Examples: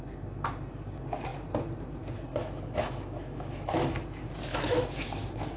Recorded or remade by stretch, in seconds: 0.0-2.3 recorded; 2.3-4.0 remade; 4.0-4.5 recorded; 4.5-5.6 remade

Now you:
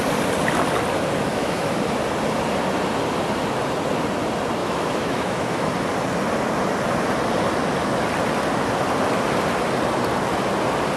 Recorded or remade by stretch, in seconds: 0.0-1.3 recorded; 1.3-1.8 remade; 1.8-4.6 recorded; 4.6-5.7 remade; 5.7-11.0 recorded